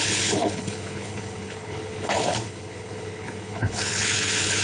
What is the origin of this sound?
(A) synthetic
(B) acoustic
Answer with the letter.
A